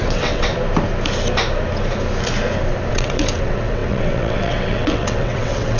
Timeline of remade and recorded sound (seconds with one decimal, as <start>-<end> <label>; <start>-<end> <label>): 0.0-0.5 remade; 0.5-2.9 recorded; 2.9-5.8 remade